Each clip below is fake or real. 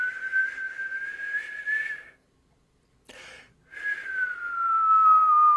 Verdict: real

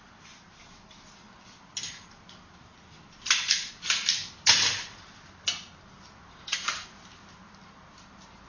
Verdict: real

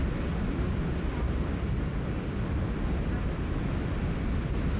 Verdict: real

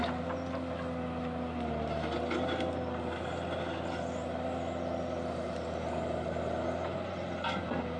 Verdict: real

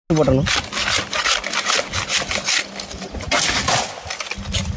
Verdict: real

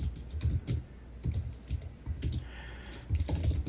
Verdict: real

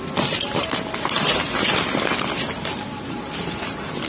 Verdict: real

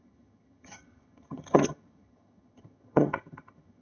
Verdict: fake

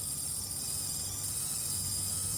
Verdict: real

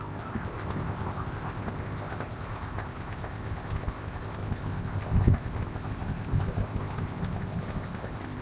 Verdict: fake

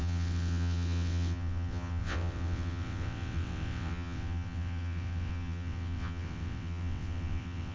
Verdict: fake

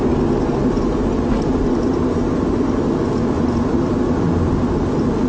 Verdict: real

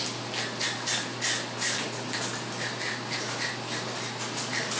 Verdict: real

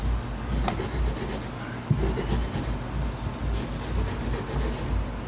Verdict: real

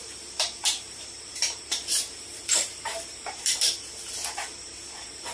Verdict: fake